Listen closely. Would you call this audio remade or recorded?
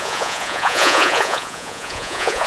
remade